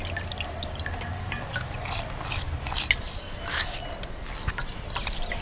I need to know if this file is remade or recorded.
recorded